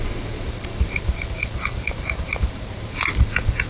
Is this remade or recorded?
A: remade